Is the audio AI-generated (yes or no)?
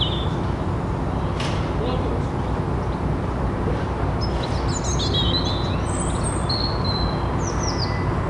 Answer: no